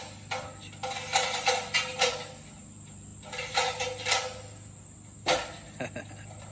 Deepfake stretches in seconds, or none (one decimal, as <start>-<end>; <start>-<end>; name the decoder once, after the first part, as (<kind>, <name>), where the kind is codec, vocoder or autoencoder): none